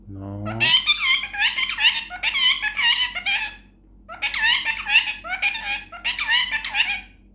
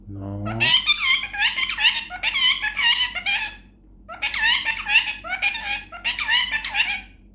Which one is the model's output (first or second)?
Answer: second